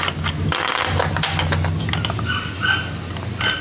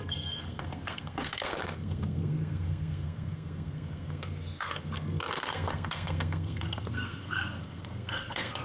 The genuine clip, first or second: first